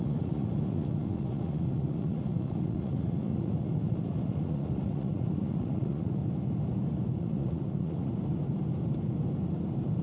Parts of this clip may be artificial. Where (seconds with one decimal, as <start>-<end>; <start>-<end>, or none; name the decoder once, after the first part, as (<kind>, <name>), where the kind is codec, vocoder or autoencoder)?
0.0-6.2 (vocoder, Vocos); 7.2-8.1